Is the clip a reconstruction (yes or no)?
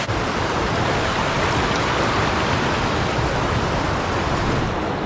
no